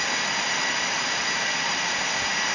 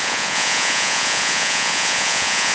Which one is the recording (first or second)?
first